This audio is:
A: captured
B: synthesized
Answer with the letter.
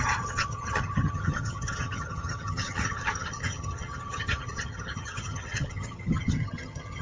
B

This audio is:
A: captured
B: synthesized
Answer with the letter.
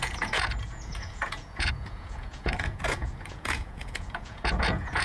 B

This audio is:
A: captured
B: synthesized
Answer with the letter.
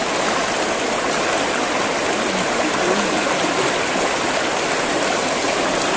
A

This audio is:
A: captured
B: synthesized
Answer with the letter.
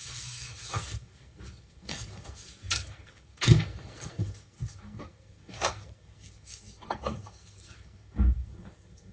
B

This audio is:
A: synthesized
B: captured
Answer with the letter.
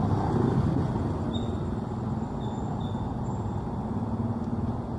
B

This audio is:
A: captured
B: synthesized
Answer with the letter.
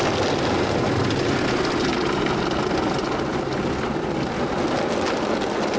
A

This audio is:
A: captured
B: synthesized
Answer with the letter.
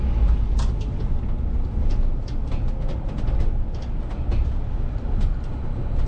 A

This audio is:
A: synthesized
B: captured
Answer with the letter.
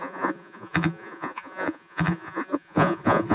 A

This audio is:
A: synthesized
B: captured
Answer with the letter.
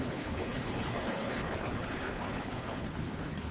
A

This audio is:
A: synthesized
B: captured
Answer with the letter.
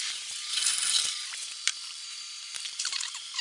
A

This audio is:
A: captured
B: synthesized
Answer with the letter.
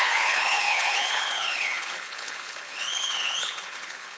B